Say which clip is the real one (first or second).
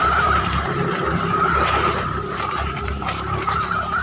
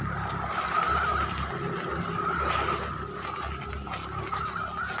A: second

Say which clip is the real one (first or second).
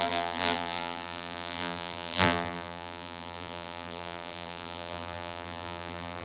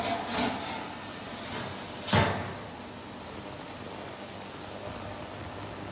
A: second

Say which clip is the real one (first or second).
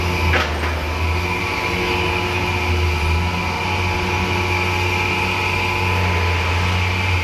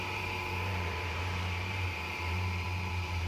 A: first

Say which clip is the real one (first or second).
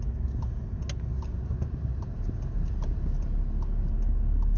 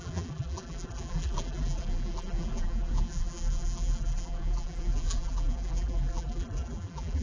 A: first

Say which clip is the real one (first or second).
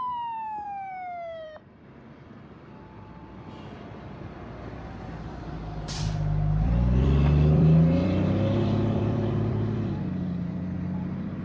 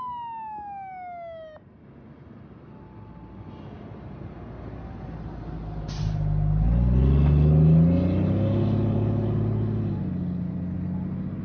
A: second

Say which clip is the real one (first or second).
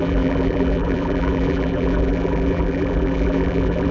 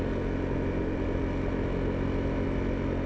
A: second